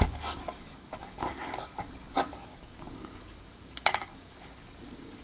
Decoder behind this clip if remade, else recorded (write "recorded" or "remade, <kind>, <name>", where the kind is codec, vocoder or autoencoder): remade, codec, DAC